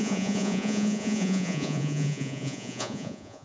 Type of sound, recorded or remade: remade